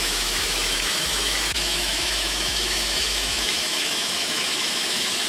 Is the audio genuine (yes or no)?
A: no